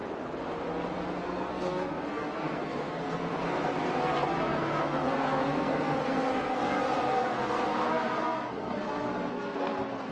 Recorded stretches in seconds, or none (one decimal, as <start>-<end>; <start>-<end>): 0.0-1.2